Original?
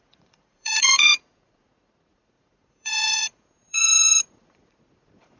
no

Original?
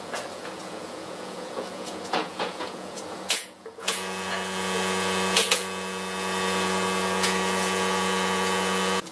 no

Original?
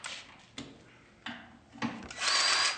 yes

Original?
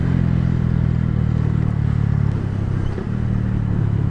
yes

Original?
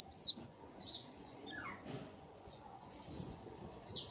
no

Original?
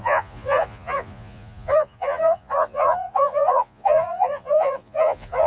no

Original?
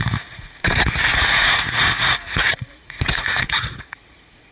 no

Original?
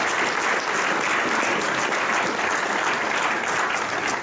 yes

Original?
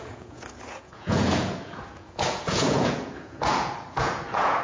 no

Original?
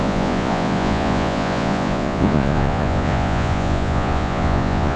no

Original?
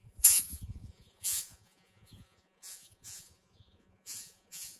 no